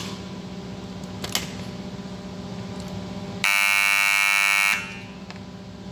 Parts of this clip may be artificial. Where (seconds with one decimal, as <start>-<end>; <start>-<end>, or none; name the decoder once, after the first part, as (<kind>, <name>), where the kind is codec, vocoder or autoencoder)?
none